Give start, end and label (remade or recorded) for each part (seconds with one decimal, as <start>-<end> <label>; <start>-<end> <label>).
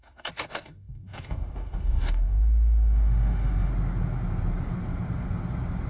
0.0-3.7 remade; 3.7-5.9 recorded